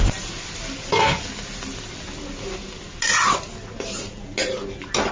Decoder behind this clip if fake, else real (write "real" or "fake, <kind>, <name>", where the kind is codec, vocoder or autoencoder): real